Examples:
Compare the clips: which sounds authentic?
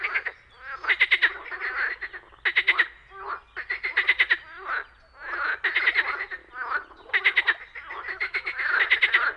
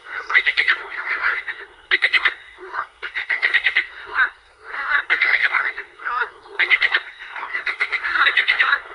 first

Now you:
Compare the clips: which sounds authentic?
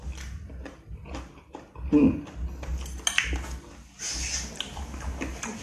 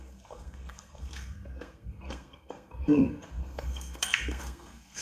first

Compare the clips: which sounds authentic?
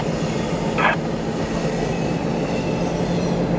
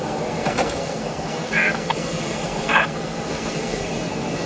first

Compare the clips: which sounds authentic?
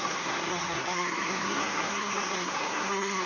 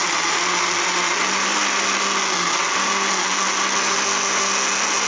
second